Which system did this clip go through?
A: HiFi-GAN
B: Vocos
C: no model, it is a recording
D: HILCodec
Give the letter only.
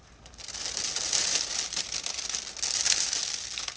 C